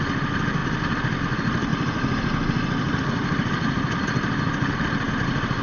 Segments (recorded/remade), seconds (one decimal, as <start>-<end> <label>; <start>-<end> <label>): 0.0-0.6 recorded; 0.6-1.2 remade; 1.2-1.7 recorded; 1.7-5.1 remade; 5.1-5.6 recorded